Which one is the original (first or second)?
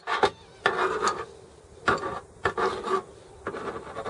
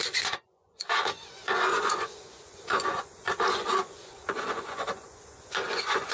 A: first